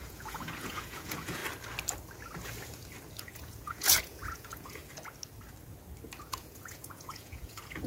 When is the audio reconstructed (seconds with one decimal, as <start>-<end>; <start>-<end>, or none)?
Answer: 0.0-1.4; 3.2-4.8; 6.2-7.9